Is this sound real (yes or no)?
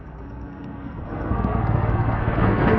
no